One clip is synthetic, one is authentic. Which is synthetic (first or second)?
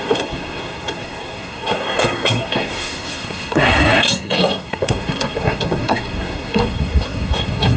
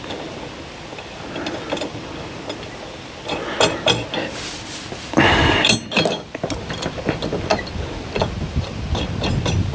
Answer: first